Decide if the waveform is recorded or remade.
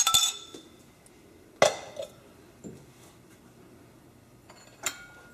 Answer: recorded